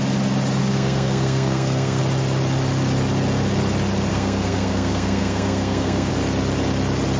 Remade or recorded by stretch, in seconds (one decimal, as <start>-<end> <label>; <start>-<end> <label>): 0.0-0.6 recorded; 0.6-2.0 remade; 2.0-4.1 recorded; 4.1-6.1 remade; 6.1-7.2 recorded